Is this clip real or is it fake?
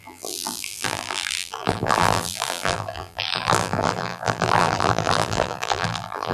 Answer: fake